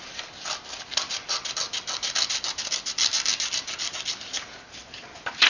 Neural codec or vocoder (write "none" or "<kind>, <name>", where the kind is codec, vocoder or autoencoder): none